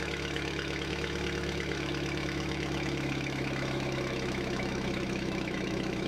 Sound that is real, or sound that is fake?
fake